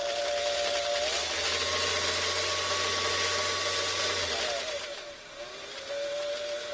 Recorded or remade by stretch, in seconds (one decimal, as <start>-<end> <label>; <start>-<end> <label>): 0.0-6.7 recorded